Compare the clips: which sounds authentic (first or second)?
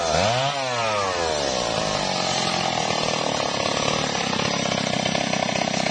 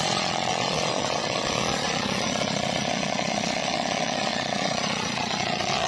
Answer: first